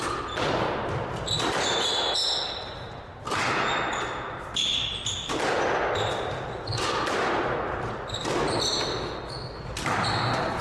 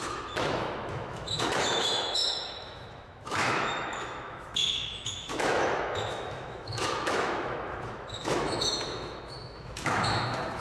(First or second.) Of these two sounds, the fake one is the second